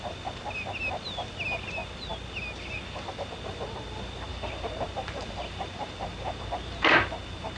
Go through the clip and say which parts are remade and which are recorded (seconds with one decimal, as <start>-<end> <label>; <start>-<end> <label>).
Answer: 0.0-4.3 recorded; 4.3-7.6 remade